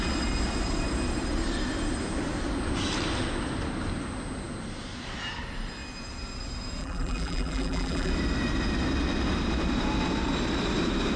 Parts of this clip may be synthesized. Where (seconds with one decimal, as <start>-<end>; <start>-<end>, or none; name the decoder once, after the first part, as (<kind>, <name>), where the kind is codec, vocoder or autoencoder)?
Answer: 6.8-8.1 (vocoder, BigVGAN v2)